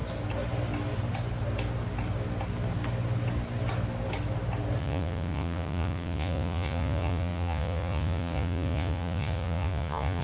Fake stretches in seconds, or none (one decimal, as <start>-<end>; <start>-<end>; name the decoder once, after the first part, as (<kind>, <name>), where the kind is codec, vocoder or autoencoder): 4.8-10.2 (vocoder, Vocos)